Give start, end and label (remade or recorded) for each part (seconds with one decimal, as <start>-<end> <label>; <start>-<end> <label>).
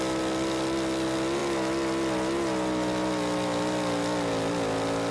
0.0-5.1 recorded